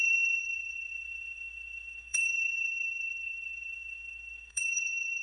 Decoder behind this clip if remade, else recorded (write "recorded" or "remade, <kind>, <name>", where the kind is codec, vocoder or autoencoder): remade, autoencoder, DAC-VAE